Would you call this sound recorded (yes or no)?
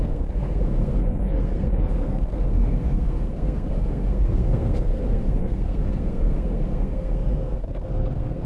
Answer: no